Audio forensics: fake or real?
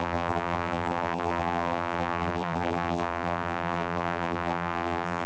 fake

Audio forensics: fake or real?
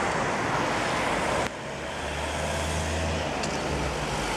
real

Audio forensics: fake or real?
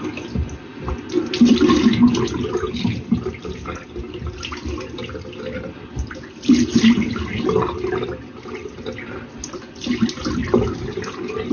real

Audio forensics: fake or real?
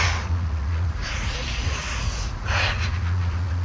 fake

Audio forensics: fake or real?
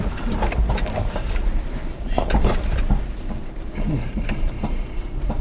fake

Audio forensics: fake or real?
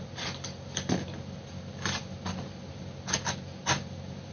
real